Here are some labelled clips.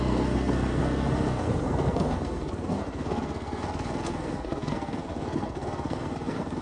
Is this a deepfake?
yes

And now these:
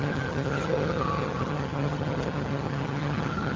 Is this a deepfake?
yes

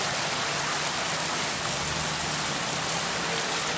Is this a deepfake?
no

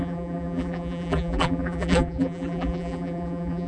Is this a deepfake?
yes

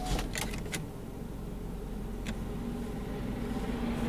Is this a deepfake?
no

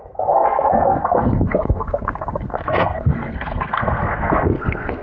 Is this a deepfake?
yes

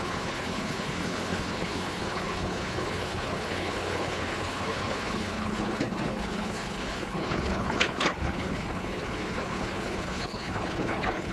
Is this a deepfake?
yes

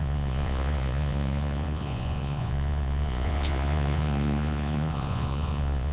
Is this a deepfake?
yes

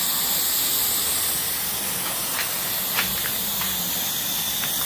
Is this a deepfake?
no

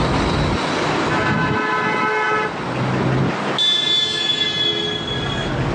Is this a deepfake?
no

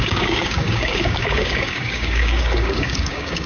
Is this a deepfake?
yes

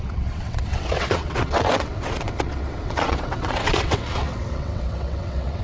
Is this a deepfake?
yes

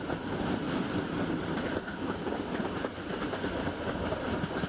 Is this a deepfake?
no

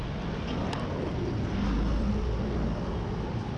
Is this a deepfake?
no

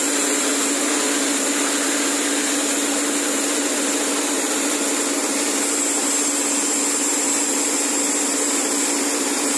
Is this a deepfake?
no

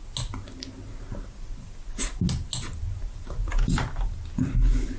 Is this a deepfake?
no